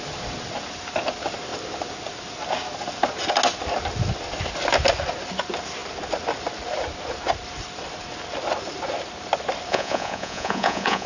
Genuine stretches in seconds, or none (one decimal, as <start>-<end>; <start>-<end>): 0.0-9.7